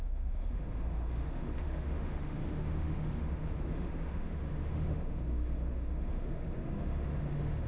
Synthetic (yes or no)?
yes